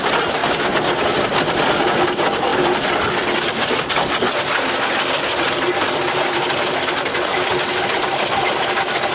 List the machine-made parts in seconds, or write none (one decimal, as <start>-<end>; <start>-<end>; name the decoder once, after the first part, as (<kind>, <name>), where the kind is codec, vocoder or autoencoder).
none